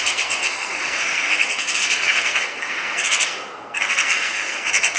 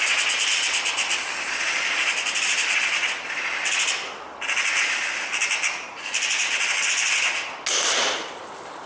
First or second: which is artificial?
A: first